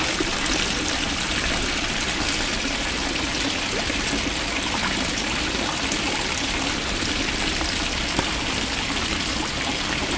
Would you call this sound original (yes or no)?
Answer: yes